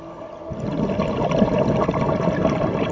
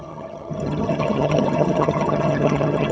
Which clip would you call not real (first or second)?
second